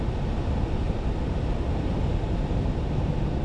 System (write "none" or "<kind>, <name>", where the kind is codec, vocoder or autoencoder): none